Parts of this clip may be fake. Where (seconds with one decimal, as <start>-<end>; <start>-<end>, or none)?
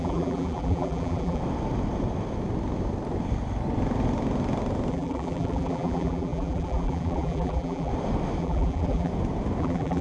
0.0-1.4; 4.9-7.9; 8.4-9.1; 9.6-10.0